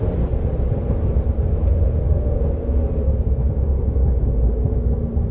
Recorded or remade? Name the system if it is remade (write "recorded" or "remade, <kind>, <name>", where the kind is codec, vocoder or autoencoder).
recorded